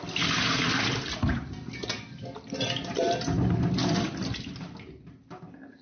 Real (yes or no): yes